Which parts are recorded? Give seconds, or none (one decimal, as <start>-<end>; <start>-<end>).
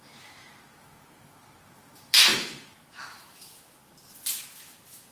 3.8-4.3